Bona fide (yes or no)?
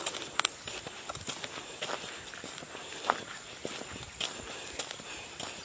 yes